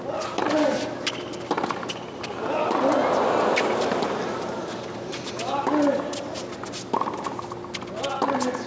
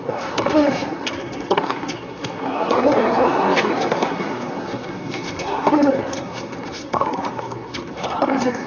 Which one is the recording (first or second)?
first